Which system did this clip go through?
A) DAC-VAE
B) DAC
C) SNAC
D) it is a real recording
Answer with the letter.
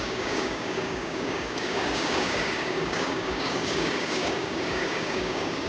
B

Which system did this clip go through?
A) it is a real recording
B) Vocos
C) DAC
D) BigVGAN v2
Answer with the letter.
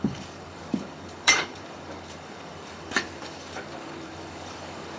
C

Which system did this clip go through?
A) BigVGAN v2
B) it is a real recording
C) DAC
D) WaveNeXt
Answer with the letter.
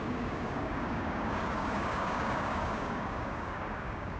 C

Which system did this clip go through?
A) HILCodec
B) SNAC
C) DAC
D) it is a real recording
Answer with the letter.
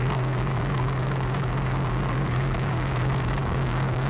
C